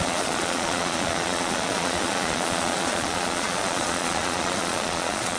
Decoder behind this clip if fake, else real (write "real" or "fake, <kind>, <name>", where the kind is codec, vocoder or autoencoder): fake, vocoder, Vocos